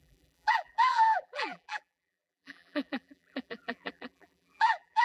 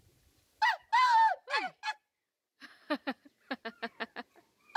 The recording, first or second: second